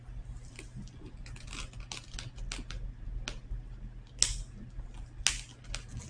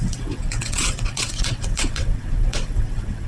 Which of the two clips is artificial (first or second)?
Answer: second